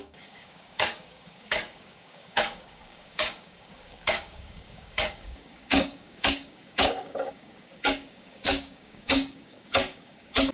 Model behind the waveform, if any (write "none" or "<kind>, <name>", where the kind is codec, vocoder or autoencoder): codec, DAC